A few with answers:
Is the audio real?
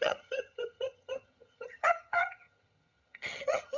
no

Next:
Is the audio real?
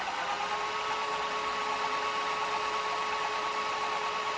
yes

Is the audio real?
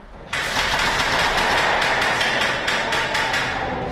yes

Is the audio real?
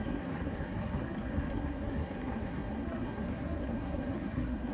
no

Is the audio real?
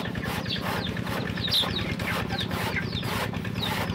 yes